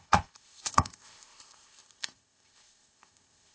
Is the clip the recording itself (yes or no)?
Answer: no